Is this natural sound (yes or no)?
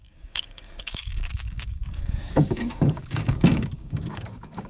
no